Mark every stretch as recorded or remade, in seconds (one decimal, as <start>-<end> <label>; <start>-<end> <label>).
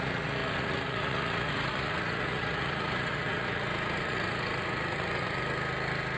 0.0-5.4 remade; 5.4-6.2 recorded